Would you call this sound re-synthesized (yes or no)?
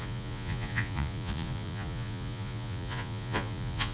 yes